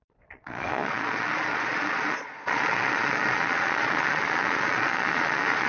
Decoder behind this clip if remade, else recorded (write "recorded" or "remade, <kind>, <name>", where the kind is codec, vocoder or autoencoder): remade, vocoder, Vocos